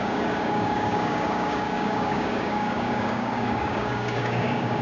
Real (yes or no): no